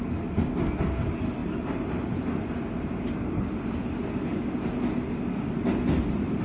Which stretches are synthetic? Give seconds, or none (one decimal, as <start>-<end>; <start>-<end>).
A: none